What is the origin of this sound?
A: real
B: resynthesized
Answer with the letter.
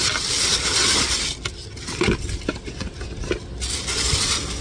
A